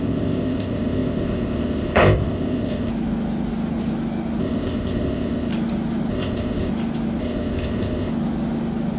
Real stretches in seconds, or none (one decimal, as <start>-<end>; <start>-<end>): 2.9-4.4; 5.5-6.1; 6.7-7.2; 8.1-9.0